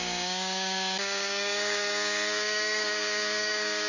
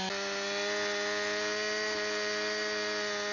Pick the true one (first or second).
second